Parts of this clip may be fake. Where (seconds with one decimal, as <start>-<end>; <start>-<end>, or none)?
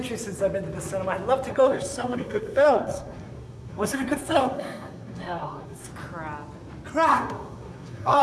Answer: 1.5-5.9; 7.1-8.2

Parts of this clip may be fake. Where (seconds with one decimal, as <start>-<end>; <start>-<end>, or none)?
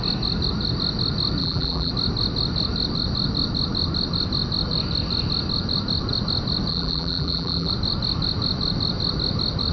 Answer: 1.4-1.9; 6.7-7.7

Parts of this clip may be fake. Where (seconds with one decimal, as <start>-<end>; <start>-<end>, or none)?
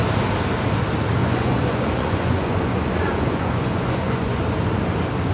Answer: 1.2-4.4